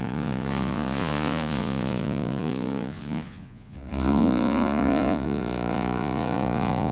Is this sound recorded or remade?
remade